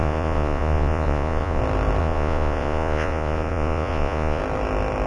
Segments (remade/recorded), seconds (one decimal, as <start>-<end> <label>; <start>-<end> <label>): 0.0-1.6 remade; 1.6-2.0 recorded; 2.0-4.4 remade; 4.4-5.1 recorded